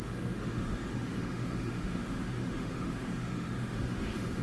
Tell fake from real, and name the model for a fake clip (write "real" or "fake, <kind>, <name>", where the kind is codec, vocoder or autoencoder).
fake, autoencoder, DAC-VAE